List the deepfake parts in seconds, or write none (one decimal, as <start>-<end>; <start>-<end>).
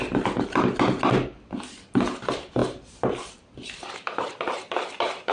none